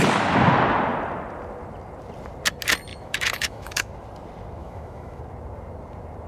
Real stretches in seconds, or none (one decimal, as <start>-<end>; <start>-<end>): 0.0-2.9; 3.9-4.6; 5.2-6.3